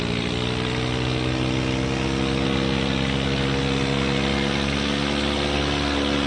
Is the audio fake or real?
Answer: real